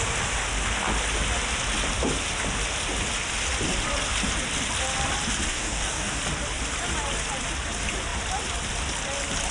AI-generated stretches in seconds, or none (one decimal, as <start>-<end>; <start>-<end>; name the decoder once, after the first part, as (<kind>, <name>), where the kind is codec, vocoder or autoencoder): 5.5-6.2 (codec, DAC)